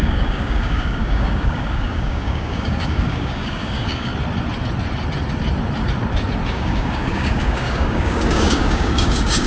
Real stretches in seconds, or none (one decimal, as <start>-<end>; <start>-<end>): 4.1-6.5